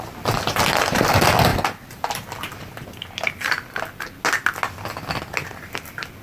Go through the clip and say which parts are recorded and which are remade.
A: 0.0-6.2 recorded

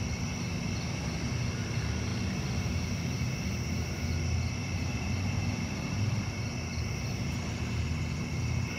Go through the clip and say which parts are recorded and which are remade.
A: 0.0-2.1 recorded; 2.1-3.5 remade; 3.5-4.6 recorded; 4.6-6.9 remade; 6.9-8.8 recorded

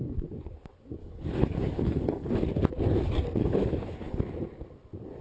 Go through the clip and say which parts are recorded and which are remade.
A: 0.0-1.0 recorded; 1.0-2.3 remade; 2.3-3.4 recorded; 3.4-4.2 remade; 4.2-5.2 recorded